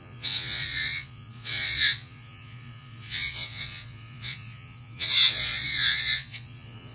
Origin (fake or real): fake